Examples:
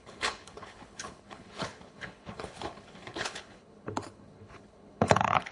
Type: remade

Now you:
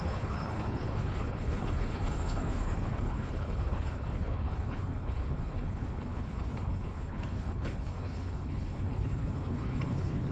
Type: remade